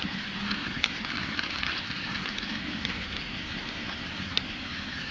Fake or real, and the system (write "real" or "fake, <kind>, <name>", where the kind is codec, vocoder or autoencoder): fake, codec, SNAC